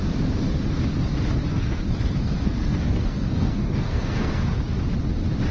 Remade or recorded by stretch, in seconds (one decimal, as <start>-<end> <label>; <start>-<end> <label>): 0.0-1.5 recorded; 1.5-4.4 remade; 4.4-5.5 recorded